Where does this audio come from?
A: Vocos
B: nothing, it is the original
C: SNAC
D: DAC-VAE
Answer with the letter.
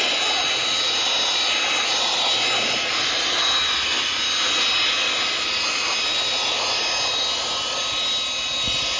B